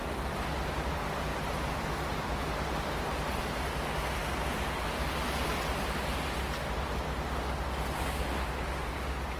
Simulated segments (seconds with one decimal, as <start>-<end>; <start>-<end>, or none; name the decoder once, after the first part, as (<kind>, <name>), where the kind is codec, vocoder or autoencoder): none